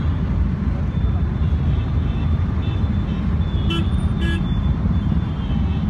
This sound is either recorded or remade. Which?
recorded